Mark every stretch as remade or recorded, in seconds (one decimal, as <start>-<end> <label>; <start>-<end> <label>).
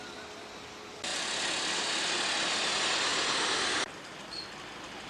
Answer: 0.0-5.1 recorded